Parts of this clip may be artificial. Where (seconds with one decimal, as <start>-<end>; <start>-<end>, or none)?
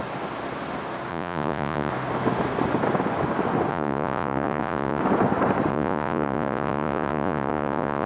1.1-1.9; 3.7-5.0; 5.7-8.1